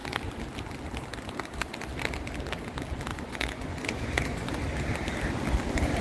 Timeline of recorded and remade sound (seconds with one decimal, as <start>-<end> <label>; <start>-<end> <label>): 0.0-3.1 recorded; 3.1-4.6 remade; 4.6-6.0 recorded